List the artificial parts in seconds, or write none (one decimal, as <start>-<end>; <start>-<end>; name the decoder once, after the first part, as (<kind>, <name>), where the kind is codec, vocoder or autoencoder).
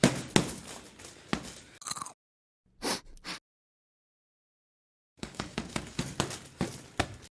4.8-6.0 (codec, DAC)